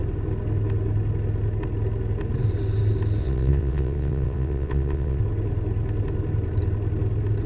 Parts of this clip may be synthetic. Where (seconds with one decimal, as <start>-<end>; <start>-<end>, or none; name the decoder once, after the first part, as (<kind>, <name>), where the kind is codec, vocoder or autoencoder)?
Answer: 3.2-5.2 (vocoder, WaveNeXt)